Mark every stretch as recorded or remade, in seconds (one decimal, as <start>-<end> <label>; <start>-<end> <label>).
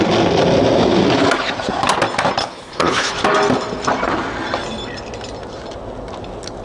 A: 0.0-2.4 recorded; 2.4-3.1 remade; 3.1-6.6 recorded